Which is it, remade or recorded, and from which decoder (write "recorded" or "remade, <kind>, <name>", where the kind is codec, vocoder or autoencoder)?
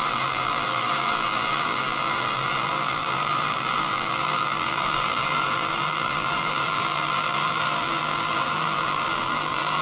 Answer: remade, vocoder, BigVGAN v2